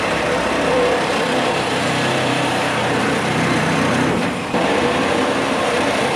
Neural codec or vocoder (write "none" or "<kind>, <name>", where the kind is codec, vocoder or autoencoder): vocoder, BigVGAN v2